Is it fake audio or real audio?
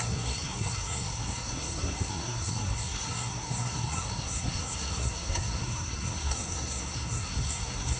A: fake